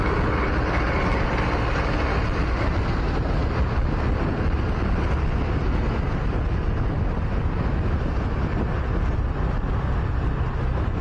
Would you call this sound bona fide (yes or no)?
yes